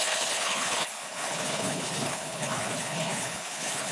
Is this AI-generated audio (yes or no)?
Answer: yes